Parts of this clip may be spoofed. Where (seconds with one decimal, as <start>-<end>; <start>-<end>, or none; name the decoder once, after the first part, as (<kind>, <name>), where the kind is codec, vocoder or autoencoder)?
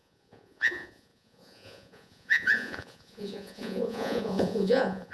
0.0-5.1 (vocoder, Vocos)